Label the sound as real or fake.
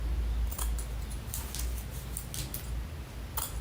real